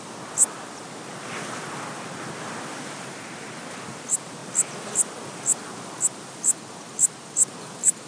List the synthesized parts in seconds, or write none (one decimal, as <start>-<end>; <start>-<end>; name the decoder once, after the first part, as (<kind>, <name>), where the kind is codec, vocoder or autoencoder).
none